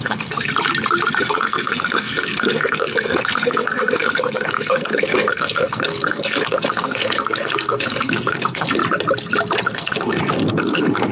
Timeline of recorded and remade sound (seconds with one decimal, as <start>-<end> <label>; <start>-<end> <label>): 0.0-0.5 remade; 0.5-1.2 recorded; 1.2-8.8 remade; 8.8-9.6 recorded; 9.6-11.1 remade